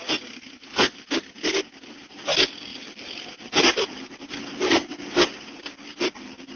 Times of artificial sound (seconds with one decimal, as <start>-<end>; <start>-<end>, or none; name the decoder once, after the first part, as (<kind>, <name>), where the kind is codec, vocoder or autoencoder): none

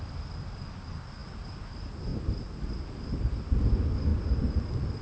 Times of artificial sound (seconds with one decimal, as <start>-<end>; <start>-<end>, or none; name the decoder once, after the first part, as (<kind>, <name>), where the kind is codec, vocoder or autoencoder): none

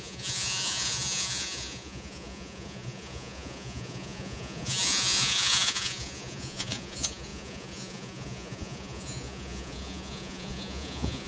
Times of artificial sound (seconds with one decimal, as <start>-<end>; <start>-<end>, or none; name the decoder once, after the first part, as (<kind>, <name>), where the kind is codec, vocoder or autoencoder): 0.0-11.3 (vocoder, Vocos)

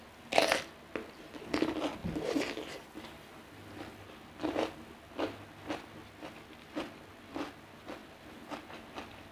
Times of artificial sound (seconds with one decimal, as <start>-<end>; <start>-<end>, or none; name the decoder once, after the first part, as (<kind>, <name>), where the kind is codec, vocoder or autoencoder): none

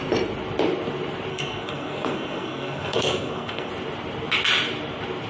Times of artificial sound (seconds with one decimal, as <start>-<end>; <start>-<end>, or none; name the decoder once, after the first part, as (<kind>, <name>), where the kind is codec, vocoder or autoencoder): 1.3-3.7 (codec, SNAC)

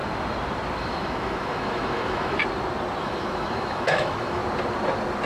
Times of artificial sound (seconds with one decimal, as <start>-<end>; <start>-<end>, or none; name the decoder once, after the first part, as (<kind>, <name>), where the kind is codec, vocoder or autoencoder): 0.8-2.4 (autoencoder, DAC-VAE); 3.0-4.4

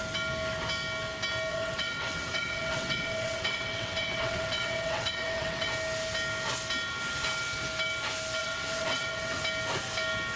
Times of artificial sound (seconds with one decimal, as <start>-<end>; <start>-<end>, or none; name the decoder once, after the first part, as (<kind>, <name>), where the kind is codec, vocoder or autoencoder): 1.5-5.7 (vocoder, WaveNeXt); 8.4-9.4